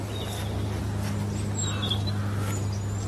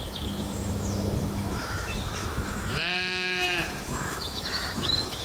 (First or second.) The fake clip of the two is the second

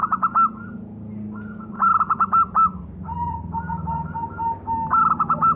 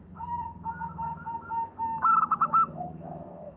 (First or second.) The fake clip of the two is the second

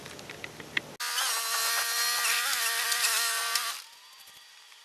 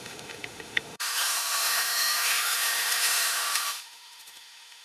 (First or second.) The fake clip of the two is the second